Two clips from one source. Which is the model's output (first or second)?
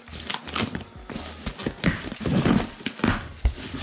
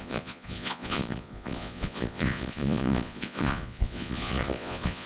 second